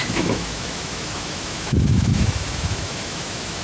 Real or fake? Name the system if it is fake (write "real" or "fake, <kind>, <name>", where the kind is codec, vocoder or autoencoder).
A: fake, autoencoder, DAC-VAE